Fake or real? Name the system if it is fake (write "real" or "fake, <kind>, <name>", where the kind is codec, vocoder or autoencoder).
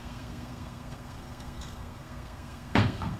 fake, codec, SNAC